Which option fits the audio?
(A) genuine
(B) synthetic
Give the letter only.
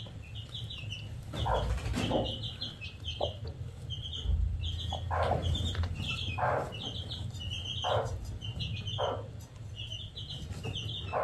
A